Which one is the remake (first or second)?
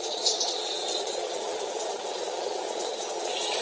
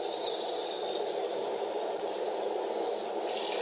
first